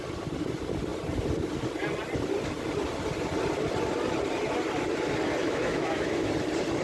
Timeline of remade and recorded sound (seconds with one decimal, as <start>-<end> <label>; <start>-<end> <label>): 0.0-5.4 recorded; 5.4-6.3 remade; 6.3-6.8 recorded